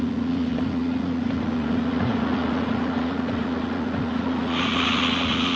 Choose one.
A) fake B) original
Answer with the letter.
A